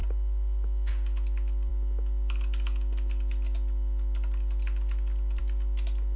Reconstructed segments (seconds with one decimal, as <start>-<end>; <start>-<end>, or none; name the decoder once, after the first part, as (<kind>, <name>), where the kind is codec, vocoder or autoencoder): none